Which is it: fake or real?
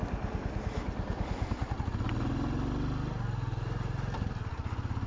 real